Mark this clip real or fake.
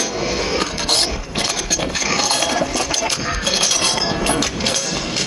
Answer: fake